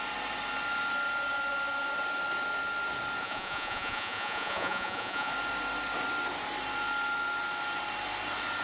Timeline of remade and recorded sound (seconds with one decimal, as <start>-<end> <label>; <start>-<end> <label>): 0.0-3.2 recorded; 3.2-5.3 remade; 5.3-8.6 recorded